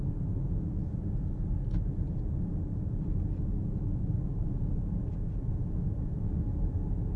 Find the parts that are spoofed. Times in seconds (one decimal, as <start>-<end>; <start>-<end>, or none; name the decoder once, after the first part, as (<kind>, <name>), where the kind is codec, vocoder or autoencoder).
none